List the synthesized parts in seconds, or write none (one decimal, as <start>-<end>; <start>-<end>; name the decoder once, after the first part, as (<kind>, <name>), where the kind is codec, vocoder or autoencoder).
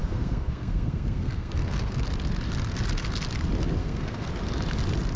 0.0-2.0 (codec, SNAC); 3.8-4.3